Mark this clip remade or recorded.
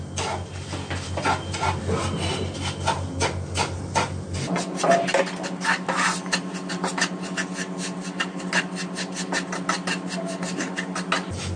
recorded